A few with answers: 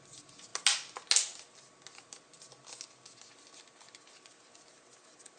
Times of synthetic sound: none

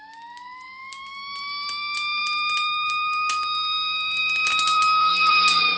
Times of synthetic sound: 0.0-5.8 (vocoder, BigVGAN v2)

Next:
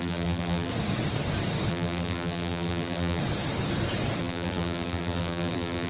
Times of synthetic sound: 0.0-0.7 (vocoder, BigVGAN v2); 1.7-3.2; 4.2-5.9

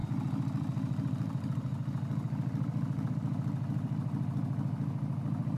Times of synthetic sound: 0.0-3.1 (vocoder, BigVGAN v2)

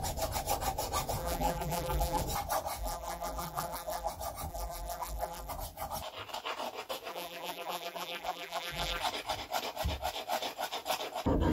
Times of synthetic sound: 1.2-2.2 (vocoder, BigVGAN v2); 2.8-4.1; 4.5-5.5; 7.1-9.0

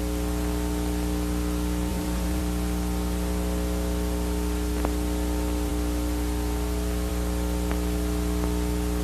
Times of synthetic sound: 1.9-2.4 (vocoder, BigVGAN v2)

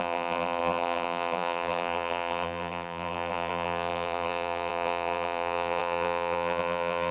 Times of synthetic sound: 0.0-7.1 (vocoder, BigVGAN v2)

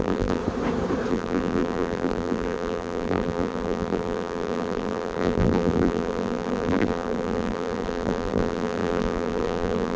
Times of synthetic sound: 0.0-0.4 (vocoder, BigVGAN v2); 1.1-10.0